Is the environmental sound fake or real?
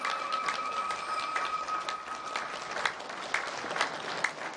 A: real